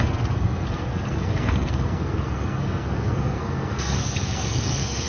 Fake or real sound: fake